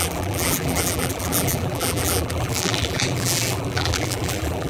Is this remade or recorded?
remade